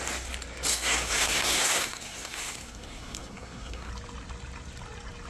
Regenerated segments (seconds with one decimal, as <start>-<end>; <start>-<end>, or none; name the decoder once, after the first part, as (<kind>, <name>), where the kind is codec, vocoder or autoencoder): 0.7-3.9 (codec, SNAC)